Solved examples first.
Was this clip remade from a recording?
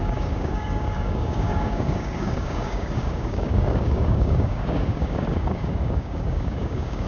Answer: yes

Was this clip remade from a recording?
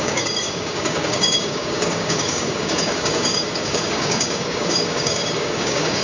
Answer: yes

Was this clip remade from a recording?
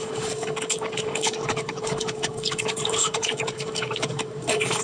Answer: yes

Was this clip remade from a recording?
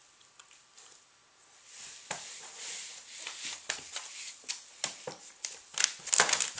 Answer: no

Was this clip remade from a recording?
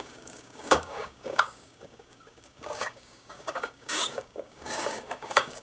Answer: yes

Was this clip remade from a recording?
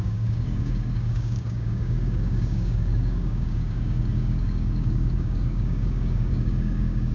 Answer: yes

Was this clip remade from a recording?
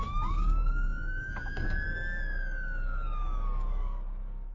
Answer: yes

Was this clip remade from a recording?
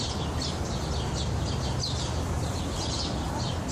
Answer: no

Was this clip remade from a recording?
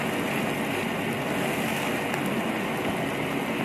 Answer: no